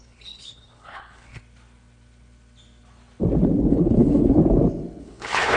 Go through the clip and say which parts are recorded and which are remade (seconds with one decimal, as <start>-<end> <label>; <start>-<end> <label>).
0.0-1.4 remade; 1.4-3.7 recorded; 3.7-4.4 remade; 4.4-5.0 recorded; 5.0-5.6 remade